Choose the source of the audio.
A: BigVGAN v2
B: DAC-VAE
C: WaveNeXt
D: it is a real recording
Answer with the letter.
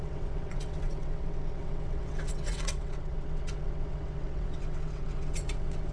C